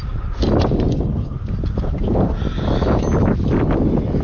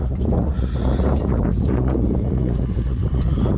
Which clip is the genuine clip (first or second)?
first